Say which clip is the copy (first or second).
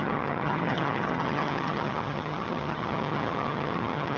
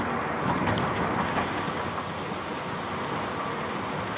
first